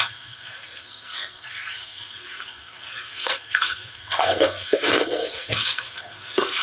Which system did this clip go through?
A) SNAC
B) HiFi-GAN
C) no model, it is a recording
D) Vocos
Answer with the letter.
A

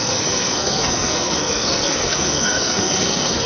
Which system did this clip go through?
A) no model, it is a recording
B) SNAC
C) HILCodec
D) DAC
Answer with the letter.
B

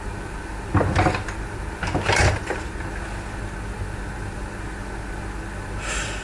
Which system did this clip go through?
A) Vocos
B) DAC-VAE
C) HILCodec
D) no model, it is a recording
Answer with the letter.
D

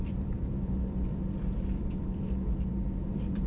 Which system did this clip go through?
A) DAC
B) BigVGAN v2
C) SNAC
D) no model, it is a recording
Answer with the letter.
B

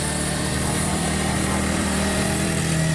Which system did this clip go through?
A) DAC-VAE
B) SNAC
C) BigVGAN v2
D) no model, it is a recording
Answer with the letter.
C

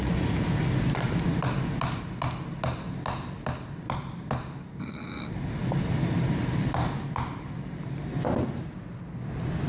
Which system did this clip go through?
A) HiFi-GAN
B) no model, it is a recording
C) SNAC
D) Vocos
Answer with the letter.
B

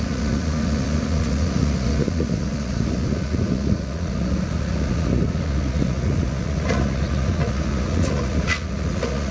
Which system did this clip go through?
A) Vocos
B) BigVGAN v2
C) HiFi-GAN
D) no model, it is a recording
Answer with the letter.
A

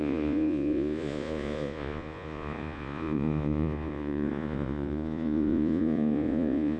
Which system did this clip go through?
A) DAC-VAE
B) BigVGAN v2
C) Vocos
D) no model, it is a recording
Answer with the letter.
C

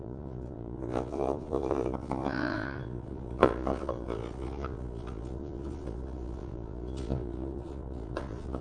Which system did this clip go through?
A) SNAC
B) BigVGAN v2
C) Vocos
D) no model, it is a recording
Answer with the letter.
C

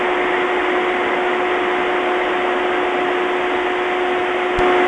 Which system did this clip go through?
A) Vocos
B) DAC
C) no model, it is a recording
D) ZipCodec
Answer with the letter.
C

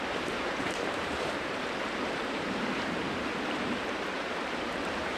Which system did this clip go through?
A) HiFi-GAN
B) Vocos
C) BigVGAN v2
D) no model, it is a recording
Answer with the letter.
C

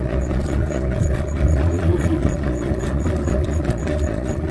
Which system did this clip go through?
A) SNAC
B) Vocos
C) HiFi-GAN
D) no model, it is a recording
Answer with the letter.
B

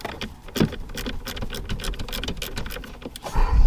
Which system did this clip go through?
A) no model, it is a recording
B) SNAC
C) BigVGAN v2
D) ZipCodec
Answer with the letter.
A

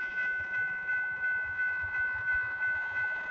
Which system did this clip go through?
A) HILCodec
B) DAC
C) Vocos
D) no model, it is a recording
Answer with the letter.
C